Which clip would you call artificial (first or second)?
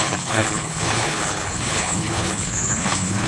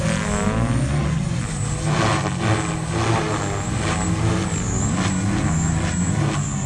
first